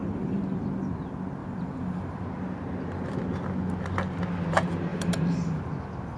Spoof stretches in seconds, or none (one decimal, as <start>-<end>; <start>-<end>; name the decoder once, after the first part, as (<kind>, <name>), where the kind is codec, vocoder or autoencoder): 0.0-0.6 (vocoder, BigVGAN v2); 1.4-2.2; 4.9-5.6